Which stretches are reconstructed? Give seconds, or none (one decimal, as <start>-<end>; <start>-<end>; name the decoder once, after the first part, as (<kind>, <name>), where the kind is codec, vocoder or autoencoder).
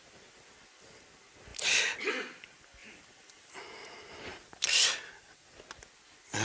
1.5-2.1 (vocoder, BigVGAN v2); 2.8-3.5; 4.3-5.7